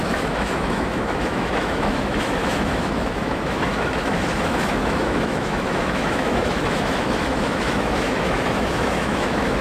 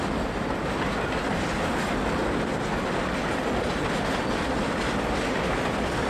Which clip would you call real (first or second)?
second